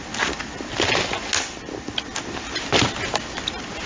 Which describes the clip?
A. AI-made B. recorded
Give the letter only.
B